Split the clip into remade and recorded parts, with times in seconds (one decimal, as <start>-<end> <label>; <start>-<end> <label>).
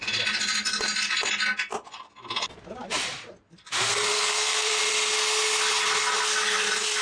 0.0-3.9 recorded; 3.9-4.8 remade; 4.8-7.0 recorded